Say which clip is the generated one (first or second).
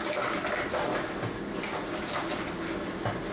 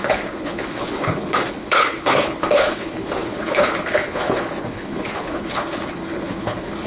second